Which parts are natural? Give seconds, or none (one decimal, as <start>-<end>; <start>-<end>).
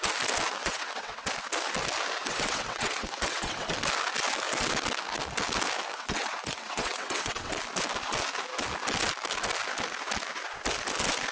0.0-0.6; 1.3-2.2; 3.7-5.9; 7.5-11.3